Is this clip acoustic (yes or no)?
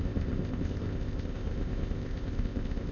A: no